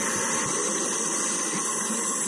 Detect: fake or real real